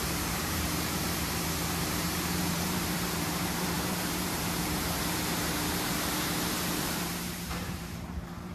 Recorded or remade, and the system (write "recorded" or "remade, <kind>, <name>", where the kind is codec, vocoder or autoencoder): remade, vocoder, BigVGAN v2